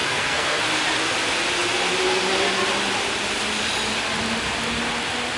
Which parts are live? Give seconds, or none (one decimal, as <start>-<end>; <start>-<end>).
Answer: 0.6-5.4